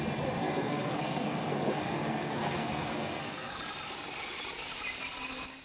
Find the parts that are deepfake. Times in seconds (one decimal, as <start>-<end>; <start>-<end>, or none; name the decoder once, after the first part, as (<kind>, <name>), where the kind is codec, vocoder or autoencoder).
0.4-3.6 (codec, SNAC)